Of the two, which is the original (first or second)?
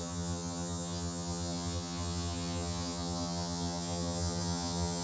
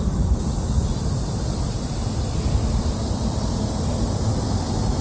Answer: second